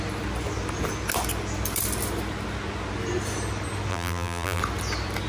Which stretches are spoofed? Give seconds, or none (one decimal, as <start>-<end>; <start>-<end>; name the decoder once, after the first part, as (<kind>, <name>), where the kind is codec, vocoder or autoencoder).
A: 3.9-4.6 (vocoder, BigVGAN v2)